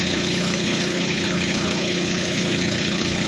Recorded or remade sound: remade